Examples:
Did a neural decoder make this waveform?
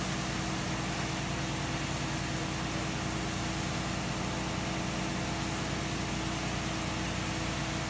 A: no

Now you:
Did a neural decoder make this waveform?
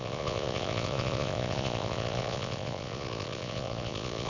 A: yes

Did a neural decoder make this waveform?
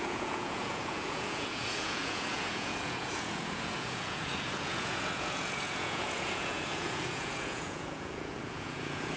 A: yes